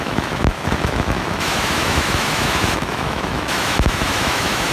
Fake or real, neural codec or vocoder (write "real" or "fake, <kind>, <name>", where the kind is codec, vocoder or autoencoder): fake, autoencoder, DAC-VAE